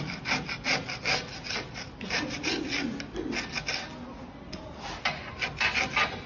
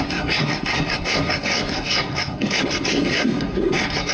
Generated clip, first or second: second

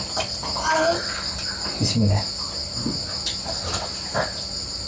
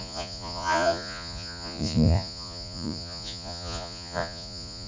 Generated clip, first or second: second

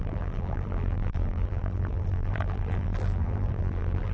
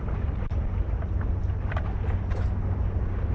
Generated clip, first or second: first